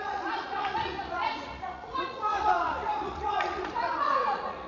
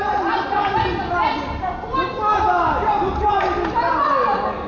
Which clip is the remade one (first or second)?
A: first